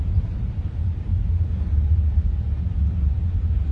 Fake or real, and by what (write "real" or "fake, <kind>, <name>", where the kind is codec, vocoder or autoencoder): real